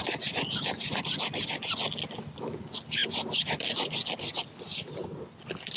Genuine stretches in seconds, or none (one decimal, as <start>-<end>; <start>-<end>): 0.0-5.8

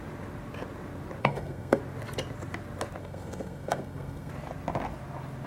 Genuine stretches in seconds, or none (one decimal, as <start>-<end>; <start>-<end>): 0.0-1.2; 1.8-3.0; 4.3-5.5

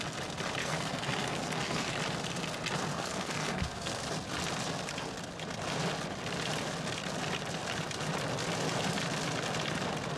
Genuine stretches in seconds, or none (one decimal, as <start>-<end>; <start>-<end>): 0.0-0.6; 1.9-2.9; 4.0-10.2

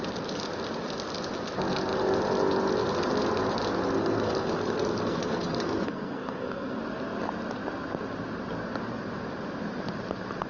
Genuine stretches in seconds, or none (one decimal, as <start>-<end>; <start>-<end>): 0.0-4.0; 6.8-10.5